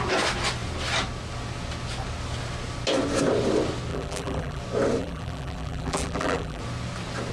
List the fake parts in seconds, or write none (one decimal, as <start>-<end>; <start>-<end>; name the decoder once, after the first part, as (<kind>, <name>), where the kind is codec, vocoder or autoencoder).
3.9-4.6 (vocoder, BigVGAN v2); 5.0-6.6